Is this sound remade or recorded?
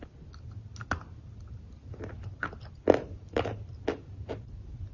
recorded